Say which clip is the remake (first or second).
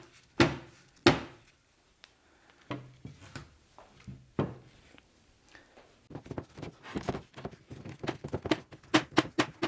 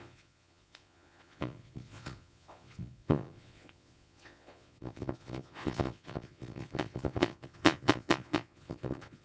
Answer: second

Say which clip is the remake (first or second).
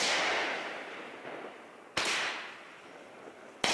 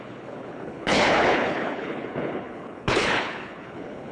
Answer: second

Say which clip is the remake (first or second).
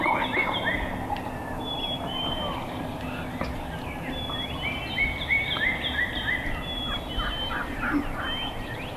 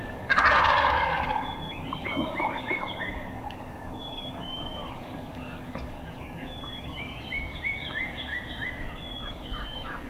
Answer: second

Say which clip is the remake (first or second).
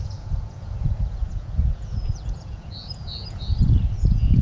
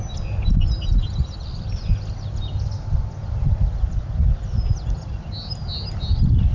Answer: first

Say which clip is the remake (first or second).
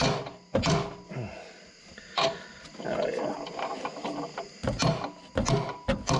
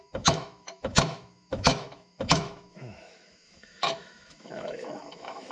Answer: second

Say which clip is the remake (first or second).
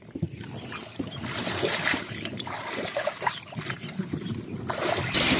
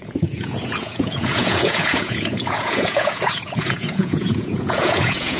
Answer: second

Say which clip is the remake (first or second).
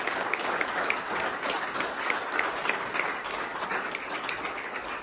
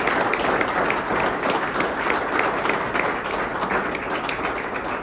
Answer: first